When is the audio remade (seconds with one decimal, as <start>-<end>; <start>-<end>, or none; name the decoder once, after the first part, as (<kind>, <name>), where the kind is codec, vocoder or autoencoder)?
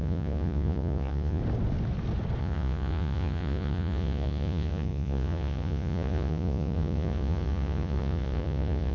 0.0-1.4 (vocoder, Vocos); 2.4-8.9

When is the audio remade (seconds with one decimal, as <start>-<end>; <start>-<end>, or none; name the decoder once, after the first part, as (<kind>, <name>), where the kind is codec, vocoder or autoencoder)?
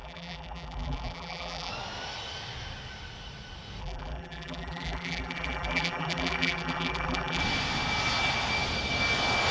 0.0-1.7 (vocoder, BigVGAN v2); 3.8-7.4